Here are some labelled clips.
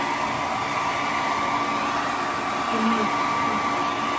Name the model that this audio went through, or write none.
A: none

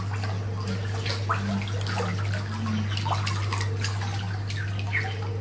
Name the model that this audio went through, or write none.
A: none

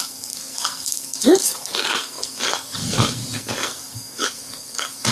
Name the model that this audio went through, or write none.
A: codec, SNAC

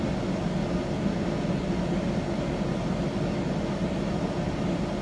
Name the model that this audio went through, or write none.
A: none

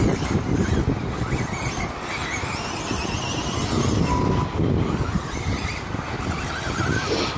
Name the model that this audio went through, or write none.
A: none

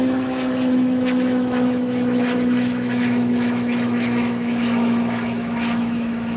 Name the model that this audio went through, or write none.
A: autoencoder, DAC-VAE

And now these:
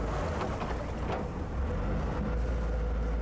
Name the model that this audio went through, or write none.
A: none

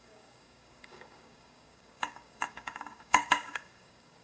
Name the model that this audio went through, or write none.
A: codec, DAC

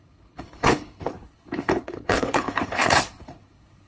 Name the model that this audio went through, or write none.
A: codec, HILCodec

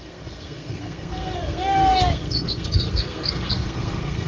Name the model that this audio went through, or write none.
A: codec, SNAC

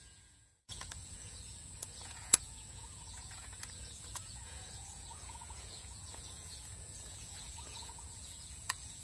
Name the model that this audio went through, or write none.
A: vocoder, Vocos